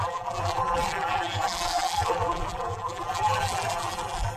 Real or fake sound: fake